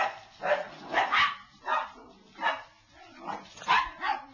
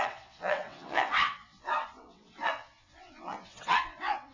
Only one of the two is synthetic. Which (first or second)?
second